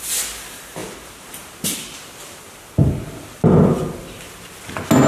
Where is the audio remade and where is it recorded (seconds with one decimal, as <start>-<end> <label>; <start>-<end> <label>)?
0.0-5.1 recorded